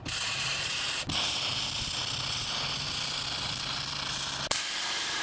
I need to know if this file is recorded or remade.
recorded